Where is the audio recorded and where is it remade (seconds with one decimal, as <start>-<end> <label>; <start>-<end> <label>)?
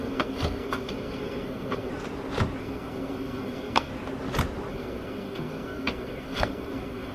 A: 0.0-1.9 remade; 1.9-2.6 recorded; 2.6-3.9 remade; 3.9-4.7 recorded; 4.7-7.1 remade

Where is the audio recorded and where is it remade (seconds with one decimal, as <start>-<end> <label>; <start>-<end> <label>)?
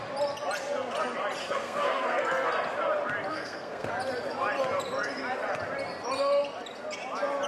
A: 0.0-1.4 recorded; 1.4-2.5 remade; 2.5-3.3 recorded; 3.3-3.9 remade; 3.9-7.5 recorded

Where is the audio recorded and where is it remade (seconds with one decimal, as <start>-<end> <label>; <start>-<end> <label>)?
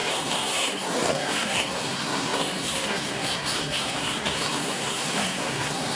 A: 0.0-5.9 remade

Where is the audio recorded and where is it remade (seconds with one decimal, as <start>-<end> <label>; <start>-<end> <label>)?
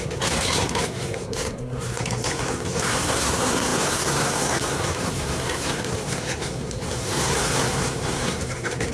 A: 0.0-8.9 remade